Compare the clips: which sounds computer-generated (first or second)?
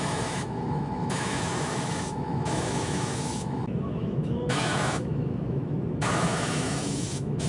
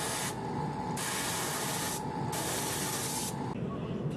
first